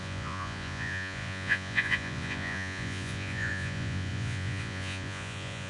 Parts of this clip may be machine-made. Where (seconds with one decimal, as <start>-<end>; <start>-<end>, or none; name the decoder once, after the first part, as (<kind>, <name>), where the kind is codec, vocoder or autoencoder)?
0.0-5.7 (vocoder, Vocos)